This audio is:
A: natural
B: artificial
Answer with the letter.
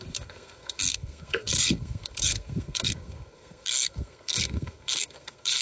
B